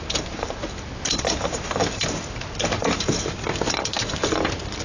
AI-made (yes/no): no